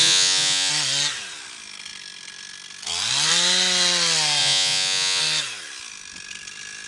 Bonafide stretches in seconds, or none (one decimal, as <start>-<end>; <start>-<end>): 0.7-4.4; 5.2-6.9